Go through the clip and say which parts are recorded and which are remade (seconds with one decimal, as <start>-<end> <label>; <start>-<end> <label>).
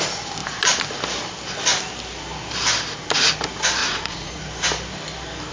0.0-3.8 recorded; 3.8-4.4 remade; 4.4-5.5 recorded